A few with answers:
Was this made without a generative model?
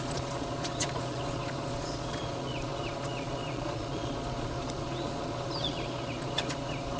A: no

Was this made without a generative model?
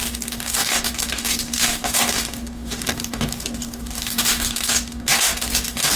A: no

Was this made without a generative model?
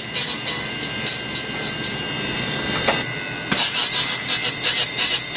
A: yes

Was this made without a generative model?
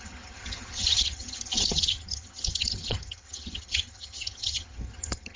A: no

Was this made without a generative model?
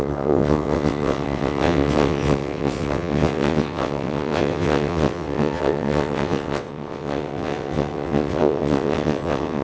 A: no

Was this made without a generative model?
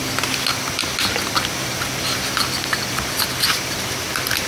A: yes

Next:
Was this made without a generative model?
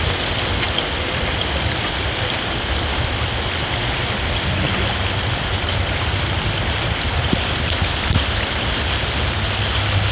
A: yes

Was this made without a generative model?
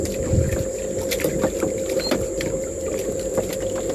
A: yes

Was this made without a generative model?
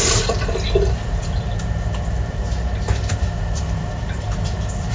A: no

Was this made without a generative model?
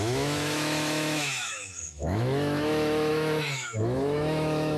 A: no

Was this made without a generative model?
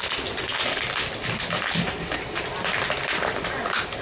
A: yes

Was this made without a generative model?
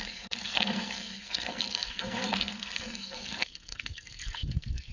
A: no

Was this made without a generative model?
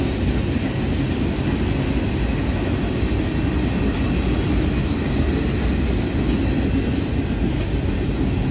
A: yes